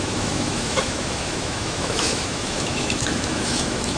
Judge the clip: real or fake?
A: fake